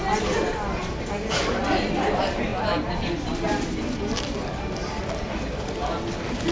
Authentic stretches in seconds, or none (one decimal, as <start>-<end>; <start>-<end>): 0.0-6.5